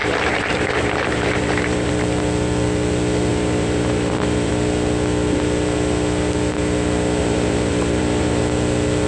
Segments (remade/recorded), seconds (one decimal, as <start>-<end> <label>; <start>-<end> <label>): 0.0-1.9 remade; 1.9-3.3 recorded; 3.3-4.5 remade; 4.5-7.2 recorded; 7.2-8.4 remade; 8.4-9.1 recorded